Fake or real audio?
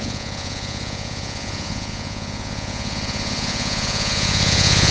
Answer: fake